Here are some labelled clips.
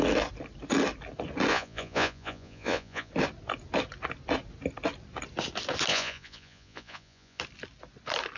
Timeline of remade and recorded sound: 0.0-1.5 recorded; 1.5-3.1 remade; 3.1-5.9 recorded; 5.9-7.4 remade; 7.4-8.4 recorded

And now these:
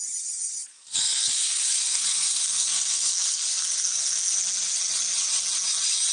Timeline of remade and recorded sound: 0.0-0.7 recorded; 0.7-4.4 remade; 4.4-6.1 recorded

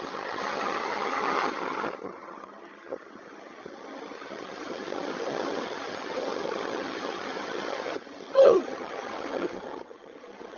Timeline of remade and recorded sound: 0.0-10.6 remade

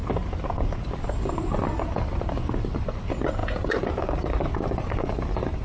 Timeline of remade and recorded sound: 0.0-0.8 recorded; 0.8-5.6 remade

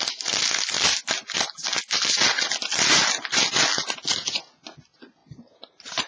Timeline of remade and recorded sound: 0.0-5.2 recorded; 5.2-6.1 remade

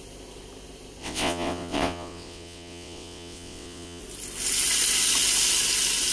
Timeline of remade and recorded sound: 0.0-1.0 recorded; 1.0-4.0 remade; 4.0-6.1 recorded

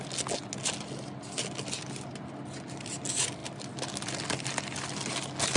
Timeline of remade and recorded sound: 0.0-5.6 recorded